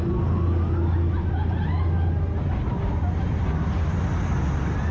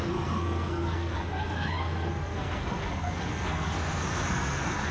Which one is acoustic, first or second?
first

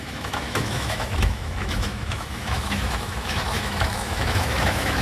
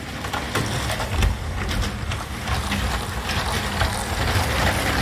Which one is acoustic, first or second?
second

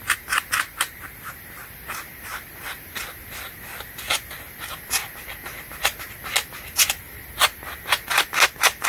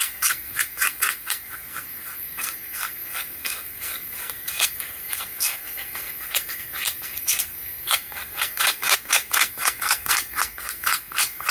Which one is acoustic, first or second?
first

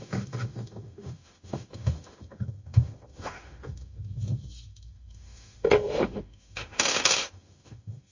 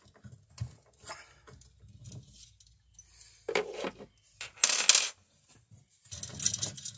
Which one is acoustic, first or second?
second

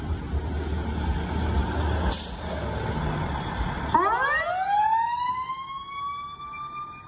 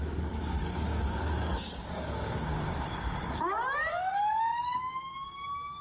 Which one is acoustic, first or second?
first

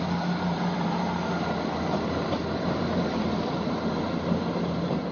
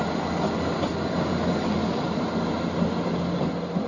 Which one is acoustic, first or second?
second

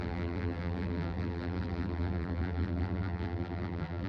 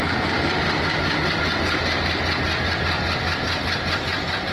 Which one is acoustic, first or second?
second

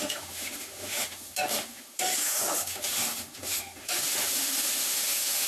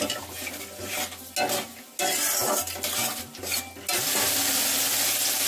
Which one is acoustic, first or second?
second